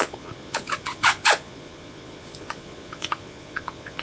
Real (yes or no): no